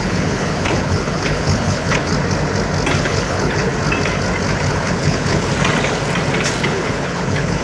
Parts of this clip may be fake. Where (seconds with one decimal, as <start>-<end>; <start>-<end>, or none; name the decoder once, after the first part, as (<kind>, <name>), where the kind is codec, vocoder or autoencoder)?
0.0-2.1 (codec, HILCodec); 3.0-3.7; 4.6-5.5; 6.6-7.6